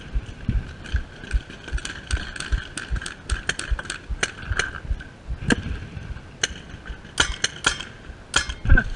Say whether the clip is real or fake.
real